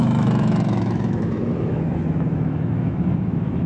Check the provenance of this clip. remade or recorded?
remade